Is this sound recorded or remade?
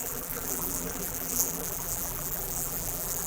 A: remade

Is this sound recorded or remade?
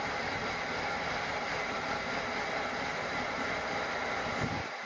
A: recorded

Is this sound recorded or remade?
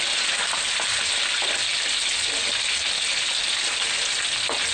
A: recorded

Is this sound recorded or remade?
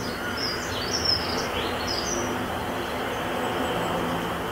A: recorded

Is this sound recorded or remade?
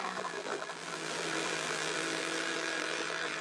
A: remade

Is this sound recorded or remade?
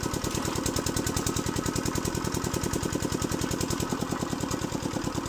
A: recorded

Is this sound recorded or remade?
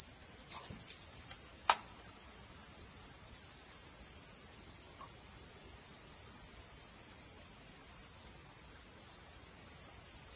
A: recorded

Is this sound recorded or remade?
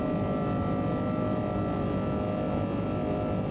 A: recorded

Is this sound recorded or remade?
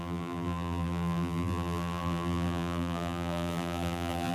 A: remade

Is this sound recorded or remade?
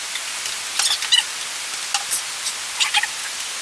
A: recorded